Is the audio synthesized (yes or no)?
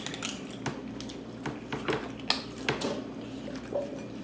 no